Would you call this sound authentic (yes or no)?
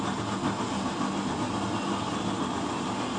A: yes